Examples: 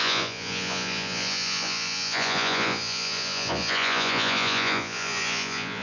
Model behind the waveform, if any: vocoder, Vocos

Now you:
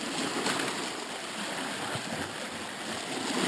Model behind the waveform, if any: none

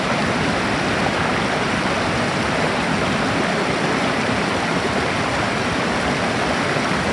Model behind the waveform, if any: none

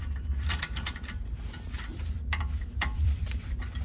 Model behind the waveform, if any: vocoder, BigVGAN v2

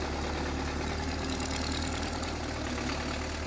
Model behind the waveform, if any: none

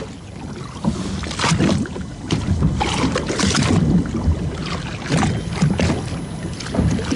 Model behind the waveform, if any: none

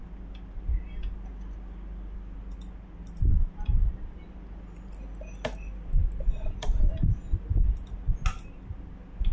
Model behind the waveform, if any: none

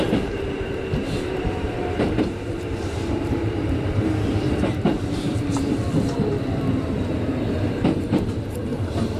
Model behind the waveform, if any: vocoder, BigVGAN v2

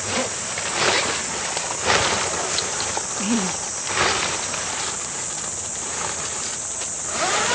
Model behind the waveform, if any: none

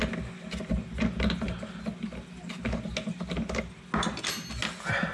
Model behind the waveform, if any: none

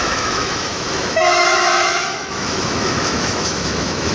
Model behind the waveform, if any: autoencoder, DAC-VAE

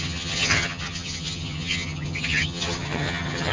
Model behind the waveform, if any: vocoder, HiFi-GAN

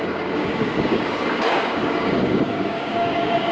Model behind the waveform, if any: codec, DAC